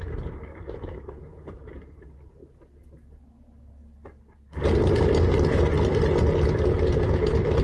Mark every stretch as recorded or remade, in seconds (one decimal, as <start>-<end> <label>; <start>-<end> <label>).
0.0-0.5 recorded; 0.5-1.7 remade; 1.7-7.6 recorded